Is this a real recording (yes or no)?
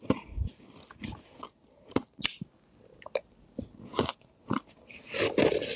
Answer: yes